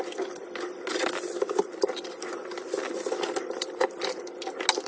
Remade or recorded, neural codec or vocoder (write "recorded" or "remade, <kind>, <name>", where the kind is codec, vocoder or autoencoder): recorded